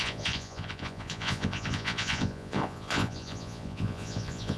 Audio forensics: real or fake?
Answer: fake